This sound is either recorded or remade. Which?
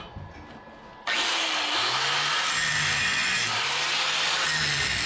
recorded